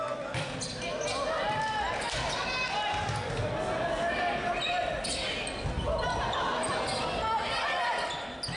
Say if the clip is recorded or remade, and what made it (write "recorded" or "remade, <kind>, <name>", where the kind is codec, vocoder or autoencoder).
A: recorded